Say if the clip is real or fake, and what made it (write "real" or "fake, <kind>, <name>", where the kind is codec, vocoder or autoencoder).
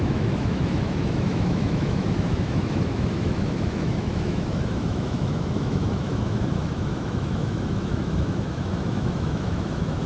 fake, autoencoder, DAC-VAE